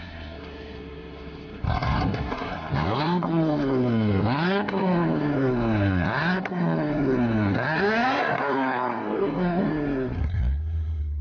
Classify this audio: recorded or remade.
remade